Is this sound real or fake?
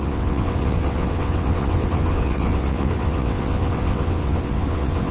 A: fake